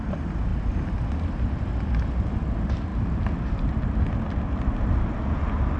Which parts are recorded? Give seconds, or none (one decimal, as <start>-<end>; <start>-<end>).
1.7-2.3; 2.9-3.5